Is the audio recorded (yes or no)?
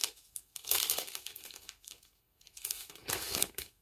no